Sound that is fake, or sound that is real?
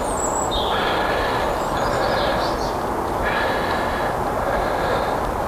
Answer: real